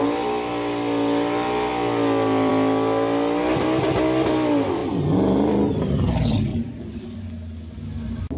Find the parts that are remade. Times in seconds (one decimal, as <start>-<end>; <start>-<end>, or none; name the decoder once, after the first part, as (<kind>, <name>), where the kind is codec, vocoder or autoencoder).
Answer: 6.5-7.3 (vocoder, BigVGAN v2)